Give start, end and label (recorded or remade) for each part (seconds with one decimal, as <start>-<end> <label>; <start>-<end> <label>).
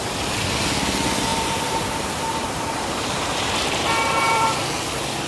0.0-1.3 recorded; 1.3-4.5 remade; 4.5-5.3 recorded